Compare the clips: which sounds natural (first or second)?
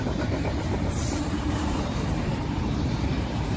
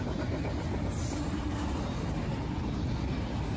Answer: second